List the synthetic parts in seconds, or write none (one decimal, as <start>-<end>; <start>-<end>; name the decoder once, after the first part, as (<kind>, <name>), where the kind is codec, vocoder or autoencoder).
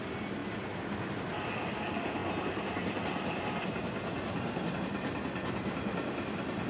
none